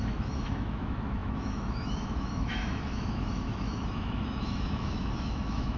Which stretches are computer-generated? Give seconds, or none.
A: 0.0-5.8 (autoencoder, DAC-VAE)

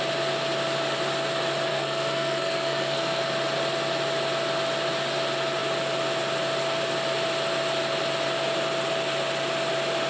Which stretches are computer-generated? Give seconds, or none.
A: 1.7-3.2 (codec, SNAC)

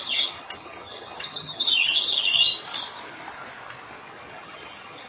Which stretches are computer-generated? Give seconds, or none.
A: 0.0-2.5 (vocoder, HiFi-GAN); 4.3-5.1

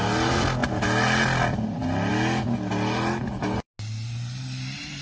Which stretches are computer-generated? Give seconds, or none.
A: none

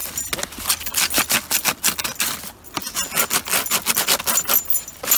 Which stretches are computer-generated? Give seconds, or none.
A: none